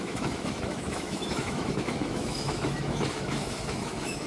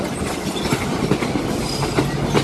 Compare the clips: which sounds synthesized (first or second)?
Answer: first